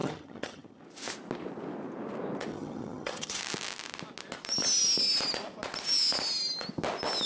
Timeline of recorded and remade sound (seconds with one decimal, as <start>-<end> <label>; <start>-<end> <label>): 0.0-0.8 remade; 0.8-2.5 recorded; 2.5-3.4 remade; 3.4-7.3 recorded